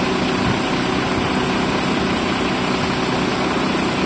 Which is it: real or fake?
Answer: real